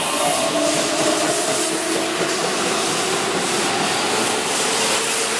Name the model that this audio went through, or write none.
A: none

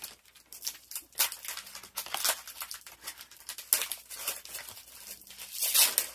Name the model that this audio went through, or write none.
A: none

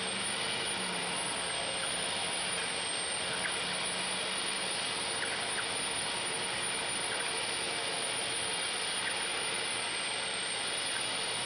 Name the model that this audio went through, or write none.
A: none